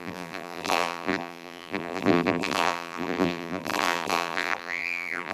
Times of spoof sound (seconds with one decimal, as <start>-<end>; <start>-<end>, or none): 0.0-5.3